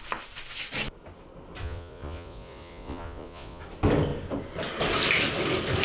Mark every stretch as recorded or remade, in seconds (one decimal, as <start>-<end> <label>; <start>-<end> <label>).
0.0-1.6 recorded; 1.6-3.6 remade; 3.6-5.8 recorded